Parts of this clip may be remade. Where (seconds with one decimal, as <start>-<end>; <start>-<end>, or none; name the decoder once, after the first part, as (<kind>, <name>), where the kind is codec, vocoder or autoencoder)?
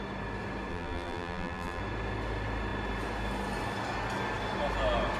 0.7-1.8 (vocoder, BigVGAN v2)